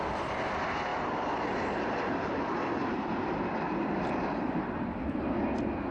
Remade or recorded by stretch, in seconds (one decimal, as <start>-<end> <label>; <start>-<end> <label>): 0.0-0.9 recorded; 0.9-4.3 remade; 4.3-5.9 recorded